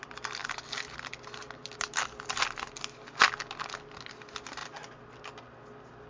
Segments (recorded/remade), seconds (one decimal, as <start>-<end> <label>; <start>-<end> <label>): 0.0-6.1 recorded